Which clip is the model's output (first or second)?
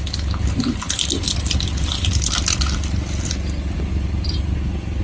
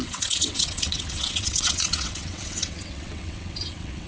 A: second